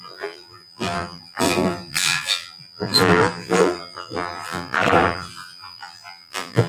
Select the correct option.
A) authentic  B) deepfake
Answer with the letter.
B